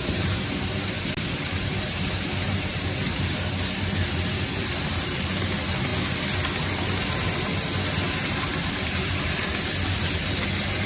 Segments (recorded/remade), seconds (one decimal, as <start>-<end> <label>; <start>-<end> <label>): 0.0-5.9 remade; 5.9-7.9 recorded; 7.9-10.9 remade